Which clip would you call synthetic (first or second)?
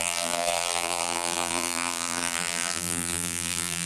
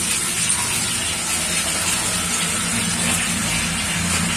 first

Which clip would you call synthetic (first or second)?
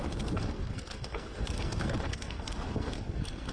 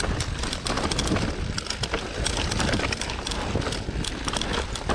first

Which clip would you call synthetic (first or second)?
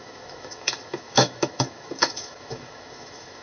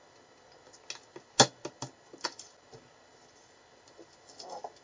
first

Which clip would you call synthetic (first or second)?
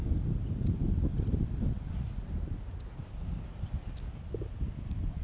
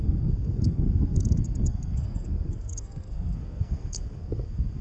second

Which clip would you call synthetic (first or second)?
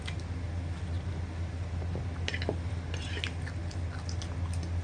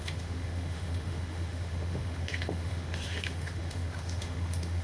second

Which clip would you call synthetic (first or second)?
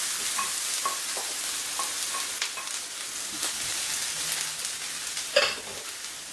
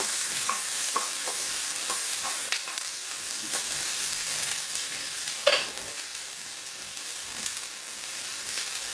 second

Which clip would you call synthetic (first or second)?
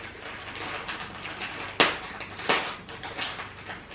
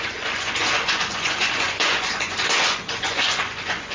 second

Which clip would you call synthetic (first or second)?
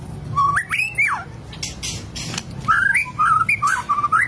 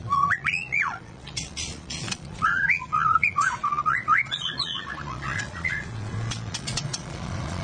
second